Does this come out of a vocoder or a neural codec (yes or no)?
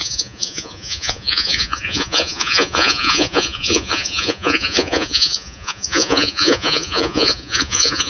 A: yes